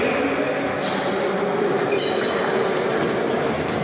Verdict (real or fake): real